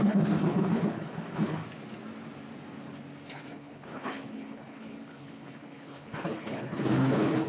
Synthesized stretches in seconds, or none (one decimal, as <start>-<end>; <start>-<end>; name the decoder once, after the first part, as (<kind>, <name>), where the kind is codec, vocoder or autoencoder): 0.0-1.6 (codec, HILCodec); 3.3-7.5